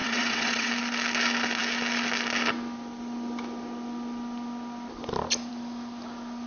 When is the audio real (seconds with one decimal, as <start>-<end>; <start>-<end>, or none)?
0.7-6.5